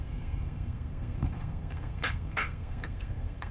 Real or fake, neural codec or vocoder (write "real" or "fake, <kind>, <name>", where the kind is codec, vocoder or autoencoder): fake, codec, SNAC